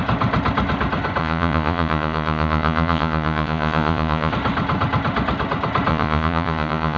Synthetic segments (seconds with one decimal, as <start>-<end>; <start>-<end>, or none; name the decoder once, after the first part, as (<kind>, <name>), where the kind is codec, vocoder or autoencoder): 1.2-4.3 (vocoder, Vocos); 5.9-7.0